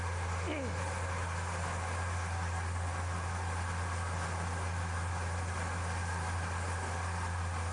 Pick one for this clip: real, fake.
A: real